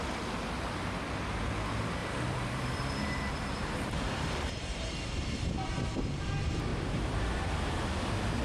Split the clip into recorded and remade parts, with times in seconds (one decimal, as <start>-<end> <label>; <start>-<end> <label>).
0.0-2.0 recorded; 2.0-6.3 remade; 6.3-6.7 recorded; 6.7-7.7 remade; 7.7-8.4 recorded